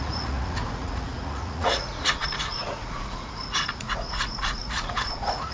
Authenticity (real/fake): fake